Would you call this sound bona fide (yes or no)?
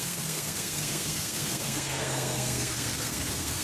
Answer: no